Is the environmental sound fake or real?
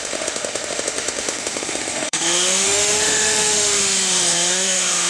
fake